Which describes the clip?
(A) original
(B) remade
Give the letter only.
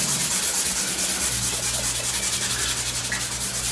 A